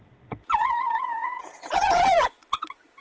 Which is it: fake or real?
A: fake